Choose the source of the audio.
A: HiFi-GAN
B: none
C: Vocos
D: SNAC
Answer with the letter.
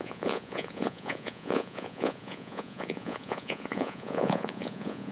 C